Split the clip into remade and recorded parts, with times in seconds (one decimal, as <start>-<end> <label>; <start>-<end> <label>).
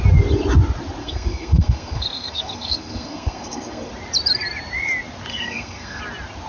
0.0-1.0 recorded; 1.0-3.9 remade; 3.9-5.3 recorded; 5.3-6.0 remade; 6.0-6.5 recorded